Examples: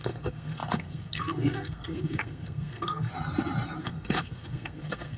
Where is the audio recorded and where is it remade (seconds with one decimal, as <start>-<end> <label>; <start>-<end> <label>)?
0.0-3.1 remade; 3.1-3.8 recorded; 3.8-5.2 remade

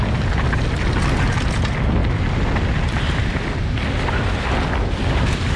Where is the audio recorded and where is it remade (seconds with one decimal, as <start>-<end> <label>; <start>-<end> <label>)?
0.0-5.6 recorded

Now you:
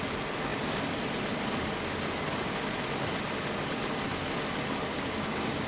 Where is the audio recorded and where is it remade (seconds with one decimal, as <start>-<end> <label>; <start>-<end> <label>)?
0.0-4.9 recorded; 4.9-5.7 remade